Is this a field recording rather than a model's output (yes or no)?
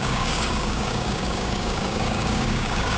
no